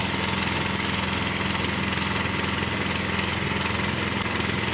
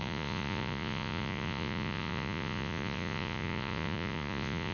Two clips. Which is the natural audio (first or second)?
first